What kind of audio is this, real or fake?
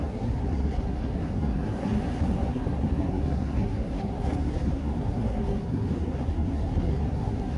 fake